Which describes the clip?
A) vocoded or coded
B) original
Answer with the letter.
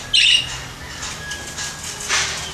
B